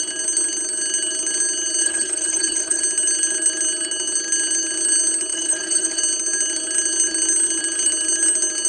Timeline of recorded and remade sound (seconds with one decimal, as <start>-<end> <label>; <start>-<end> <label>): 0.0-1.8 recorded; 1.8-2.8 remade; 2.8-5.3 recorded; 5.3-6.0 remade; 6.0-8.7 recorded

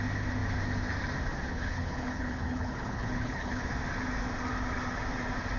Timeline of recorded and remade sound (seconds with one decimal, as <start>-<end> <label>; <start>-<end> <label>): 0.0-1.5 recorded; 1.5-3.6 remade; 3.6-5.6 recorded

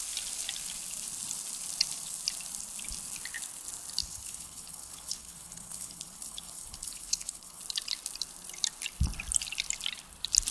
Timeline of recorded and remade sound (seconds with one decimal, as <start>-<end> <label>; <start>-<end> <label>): 0.0-4.0 recorded; 4.0-7.6 remade; 7.6-10.5 recorded

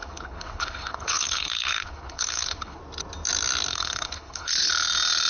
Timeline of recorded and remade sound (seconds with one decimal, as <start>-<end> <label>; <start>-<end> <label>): 0.0-2.8 remade; 2.8-3.7 recorded; 3.7-4.7 remade; 4.7-5.3 recorded